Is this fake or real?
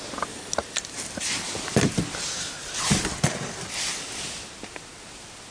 real